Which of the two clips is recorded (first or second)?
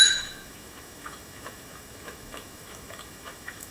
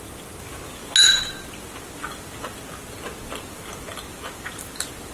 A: second